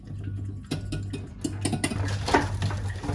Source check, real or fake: real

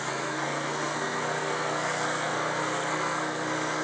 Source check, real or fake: fake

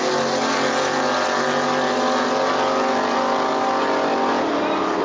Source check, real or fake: real